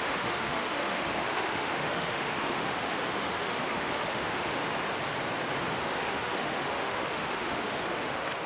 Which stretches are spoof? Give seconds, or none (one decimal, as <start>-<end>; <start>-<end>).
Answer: 0.0-4.6; 5.8-8.5